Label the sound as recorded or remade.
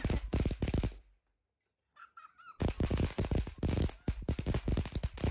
recorded